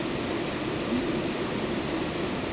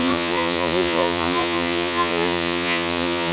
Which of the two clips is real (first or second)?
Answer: first